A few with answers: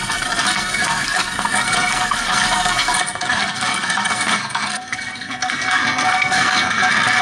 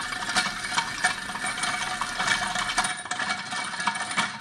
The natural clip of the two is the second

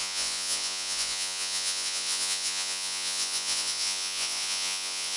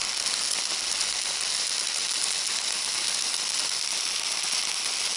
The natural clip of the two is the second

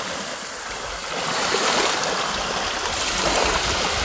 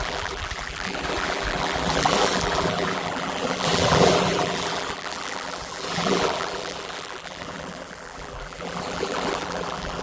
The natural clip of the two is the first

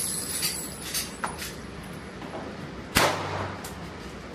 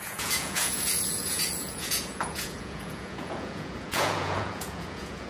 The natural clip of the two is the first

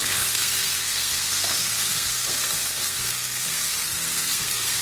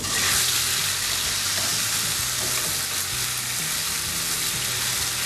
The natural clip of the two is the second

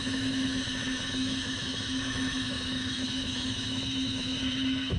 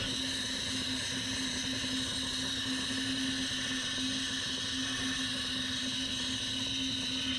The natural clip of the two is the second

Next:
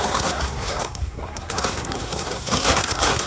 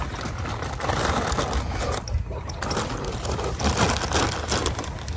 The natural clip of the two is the second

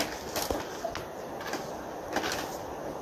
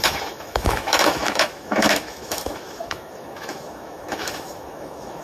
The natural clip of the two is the first